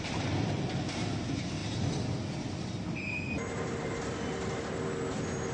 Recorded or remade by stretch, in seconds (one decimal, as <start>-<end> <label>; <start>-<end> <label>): 0.0-5.5 recorded